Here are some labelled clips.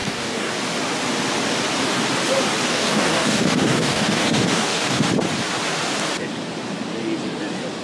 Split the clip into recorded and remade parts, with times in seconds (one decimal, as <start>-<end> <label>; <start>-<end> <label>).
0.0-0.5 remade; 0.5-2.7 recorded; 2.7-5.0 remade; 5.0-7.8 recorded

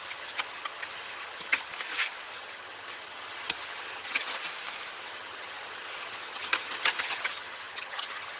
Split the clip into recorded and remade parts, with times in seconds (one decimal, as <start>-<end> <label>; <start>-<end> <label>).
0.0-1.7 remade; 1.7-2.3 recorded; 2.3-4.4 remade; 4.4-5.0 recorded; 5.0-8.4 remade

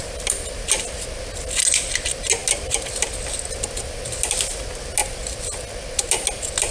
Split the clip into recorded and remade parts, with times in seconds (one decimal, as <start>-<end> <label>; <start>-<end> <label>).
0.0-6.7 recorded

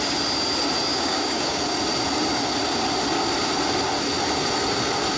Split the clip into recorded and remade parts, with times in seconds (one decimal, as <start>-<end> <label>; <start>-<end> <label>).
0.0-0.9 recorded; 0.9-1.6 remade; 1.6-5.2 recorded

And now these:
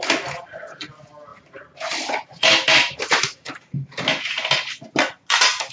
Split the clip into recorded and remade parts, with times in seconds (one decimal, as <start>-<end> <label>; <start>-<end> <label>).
0.0-1.3 recorded; 1.3-4.0 remade; 4.0-5.7 recorded

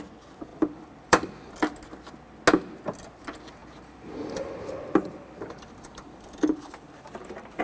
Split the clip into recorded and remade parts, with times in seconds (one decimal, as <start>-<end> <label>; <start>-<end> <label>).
0.0-0.5 recorded; 0.5-1.5 remade; 1.5-3.6 recorded; 3.6-7.6 remade

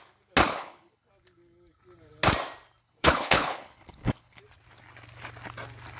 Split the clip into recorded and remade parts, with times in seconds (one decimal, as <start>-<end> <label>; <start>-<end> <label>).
0.0-0.5 recorded; 0.5-1.1 remade; 1.1-2.8 recorded; 2.8-4.4 remade; 4.4-6.0 recorded